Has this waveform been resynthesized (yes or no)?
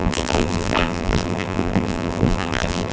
yes